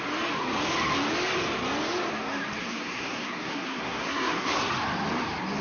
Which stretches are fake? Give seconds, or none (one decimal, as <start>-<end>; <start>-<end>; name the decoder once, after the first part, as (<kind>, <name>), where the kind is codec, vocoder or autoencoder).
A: 2.6-4.7 (codec, SNAC)

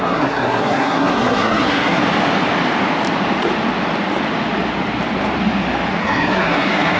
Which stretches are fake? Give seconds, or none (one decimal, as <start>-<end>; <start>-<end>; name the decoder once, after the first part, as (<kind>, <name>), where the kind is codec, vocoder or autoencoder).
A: 0.0-2.0 (codec, SNAC); 6.0-7.0

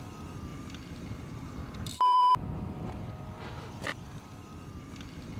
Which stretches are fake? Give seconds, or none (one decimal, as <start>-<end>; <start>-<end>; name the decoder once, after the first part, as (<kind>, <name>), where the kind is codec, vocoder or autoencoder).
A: 0.5-2.3 (vocoder, BigVGAN v2); 3.9-4.9

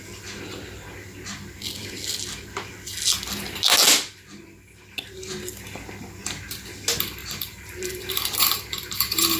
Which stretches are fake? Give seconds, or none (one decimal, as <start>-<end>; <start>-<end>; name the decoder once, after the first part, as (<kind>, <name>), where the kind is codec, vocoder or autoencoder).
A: 7.2-9.4 (vocoder, BigVGAN v2)

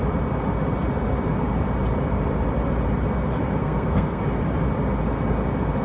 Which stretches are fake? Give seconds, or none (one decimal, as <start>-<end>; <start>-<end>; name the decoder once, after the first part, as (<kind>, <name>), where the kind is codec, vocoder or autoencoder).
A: 3.6-4.2 (codec, SNAC)

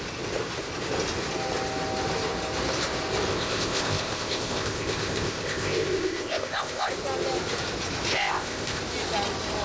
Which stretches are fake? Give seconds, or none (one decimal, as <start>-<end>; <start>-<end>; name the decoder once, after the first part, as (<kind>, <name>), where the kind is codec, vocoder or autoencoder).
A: 3.3-6.9 (codec, ZipCodec); 8.1-8.8

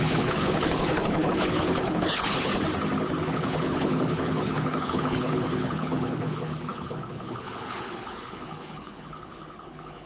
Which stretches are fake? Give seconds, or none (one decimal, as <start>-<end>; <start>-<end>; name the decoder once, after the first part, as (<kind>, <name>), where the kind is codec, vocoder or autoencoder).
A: 0.0-2.5 (codec, HILCodec); 3.3-10.1